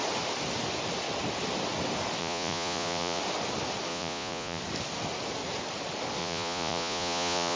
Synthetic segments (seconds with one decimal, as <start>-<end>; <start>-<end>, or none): 2.2-3.2; 3.9-4.6; 6.2-7.6